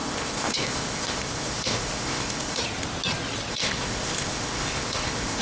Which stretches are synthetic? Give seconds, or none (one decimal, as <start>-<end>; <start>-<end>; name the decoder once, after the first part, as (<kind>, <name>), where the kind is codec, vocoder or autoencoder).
0.0-2.6 (codec, ZipCodec); 3.5-5.4